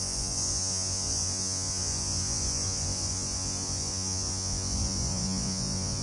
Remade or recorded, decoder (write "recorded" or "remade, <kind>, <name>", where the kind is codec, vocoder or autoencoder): remade, vocoder, Vocos